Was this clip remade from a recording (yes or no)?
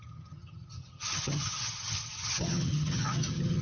yes